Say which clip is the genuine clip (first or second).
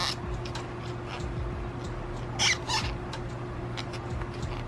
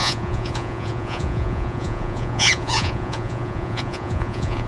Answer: first